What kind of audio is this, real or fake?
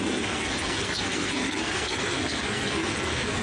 fake